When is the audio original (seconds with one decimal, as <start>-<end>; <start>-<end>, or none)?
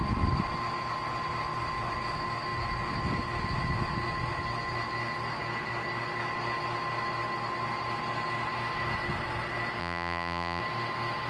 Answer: 0.0-9.8; 10.6-11.3